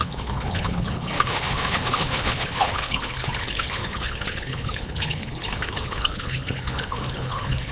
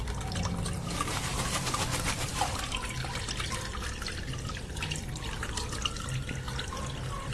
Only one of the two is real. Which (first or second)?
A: second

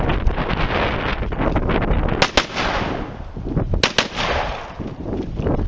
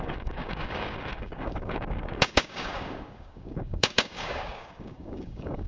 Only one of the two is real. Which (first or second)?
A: first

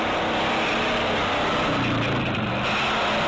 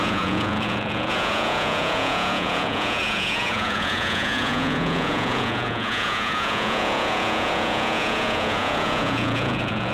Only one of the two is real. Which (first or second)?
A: first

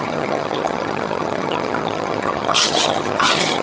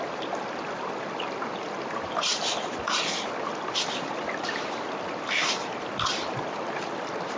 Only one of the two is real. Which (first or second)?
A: second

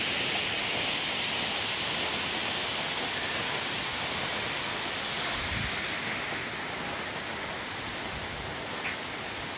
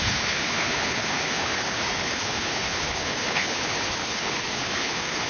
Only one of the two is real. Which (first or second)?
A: first